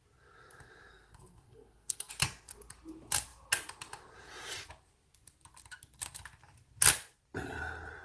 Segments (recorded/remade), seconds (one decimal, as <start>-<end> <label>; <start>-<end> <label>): 0.0-0.9 recorded; 0.9-2.1 remade; 2.1-8.0 recorded